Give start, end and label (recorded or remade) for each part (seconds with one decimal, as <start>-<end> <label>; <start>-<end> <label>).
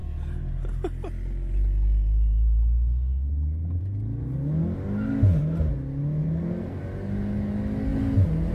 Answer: 0.0-6.2 recorded; 6.2-6.8 remade; 6.8-8.5 recorded